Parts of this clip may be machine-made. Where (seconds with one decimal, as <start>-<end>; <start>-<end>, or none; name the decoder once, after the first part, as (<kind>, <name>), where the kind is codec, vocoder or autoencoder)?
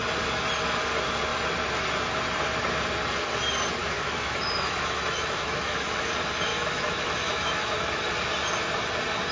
3.8-6.1 (autoencoder, DAC-VAE); 6.5-8.0